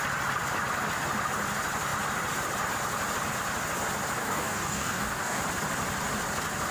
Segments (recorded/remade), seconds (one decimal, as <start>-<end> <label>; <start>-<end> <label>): 0.0-4.2 recorded; 4.2-5.4 remade; 5.4-6.7 recorded